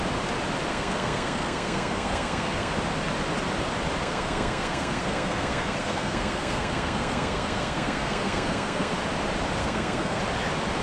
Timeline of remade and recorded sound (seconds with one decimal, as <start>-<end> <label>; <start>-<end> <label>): 0.0-0.7 recorded; 0.7-2.7 remade; 2.7-4.0 recorded; 4.0-8.9 remade; 8.9-9.6 recorded; 9.6-10.2 remade; 10.2-10.8 recorded